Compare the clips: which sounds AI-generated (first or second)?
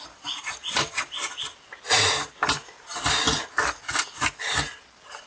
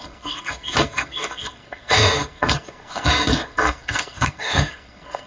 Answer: second